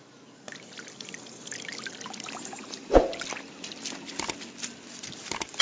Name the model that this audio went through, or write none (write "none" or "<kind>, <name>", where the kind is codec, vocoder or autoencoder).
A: none